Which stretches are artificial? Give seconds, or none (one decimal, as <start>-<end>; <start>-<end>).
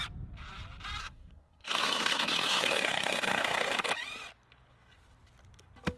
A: 1.0-3.9